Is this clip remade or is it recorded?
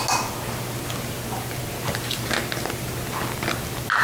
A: recorded